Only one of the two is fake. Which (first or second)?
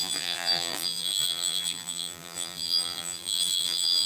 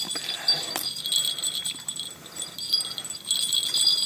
first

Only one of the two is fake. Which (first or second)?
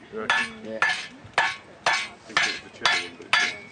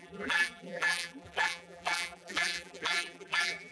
second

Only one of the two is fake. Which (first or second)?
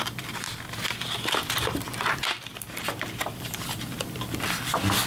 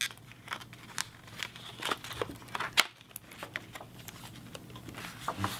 first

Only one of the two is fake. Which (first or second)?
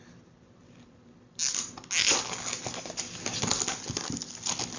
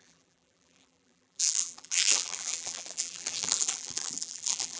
second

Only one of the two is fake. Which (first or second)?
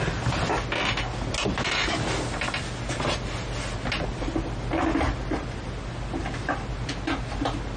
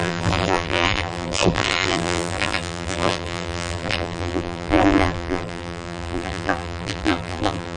second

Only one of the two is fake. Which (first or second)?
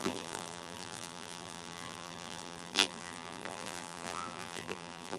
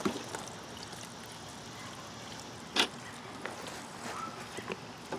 first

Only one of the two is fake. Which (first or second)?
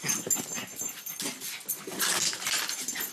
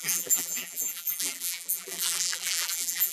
second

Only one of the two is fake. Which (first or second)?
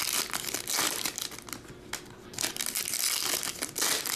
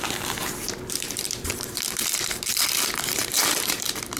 second